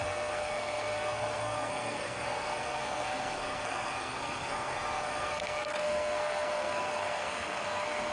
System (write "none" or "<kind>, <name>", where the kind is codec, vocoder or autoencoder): codec, SNAC